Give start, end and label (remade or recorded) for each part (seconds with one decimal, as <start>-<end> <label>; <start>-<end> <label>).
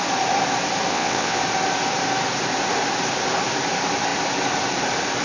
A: 0.0-0.9 recorded; 0.9-1.4 remade; 1.4-5.2 recorded